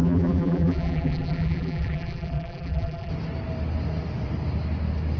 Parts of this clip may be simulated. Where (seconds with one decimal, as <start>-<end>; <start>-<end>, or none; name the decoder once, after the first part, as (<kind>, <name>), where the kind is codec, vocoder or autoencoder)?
0.0-3.1 (vocoder, BigVGAN v2)